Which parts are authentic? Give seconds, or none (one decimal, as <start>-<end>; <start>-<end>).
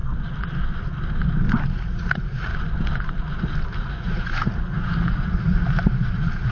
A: 0.0-1.7; 2.5-3.8